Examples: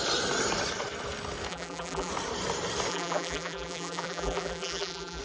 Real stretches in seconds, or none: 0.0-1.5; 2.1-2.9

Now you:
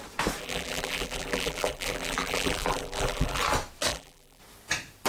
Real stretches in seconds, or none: 0.0-0.4; 3.4-3.9; 4.4-5.1